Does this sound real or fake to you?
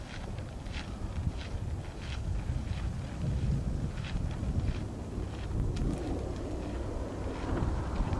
real